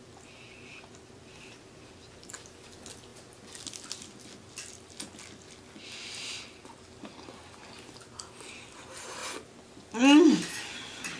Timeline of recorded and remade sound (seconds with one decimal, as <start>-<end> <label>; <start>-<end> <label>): 0.0-11.2 recorded